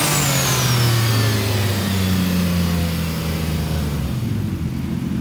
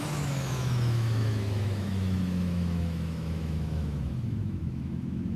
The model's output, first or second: second